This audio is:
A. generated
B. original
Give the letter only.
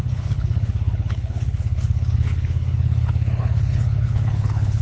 A